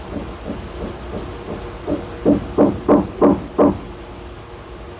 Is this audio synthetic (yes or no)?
no